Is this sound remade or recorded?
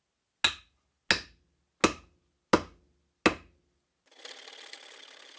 recorded